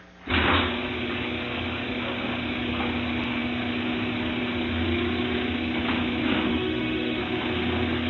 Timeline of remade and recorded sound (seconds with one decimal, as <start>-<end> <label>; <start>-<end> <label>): 0.0-6.5 recorded; 6.5-7.2 remade; 7.2-8.1 recorded